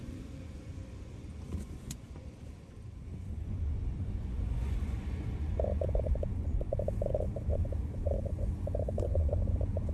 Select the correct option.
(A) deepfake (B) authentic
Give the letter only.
A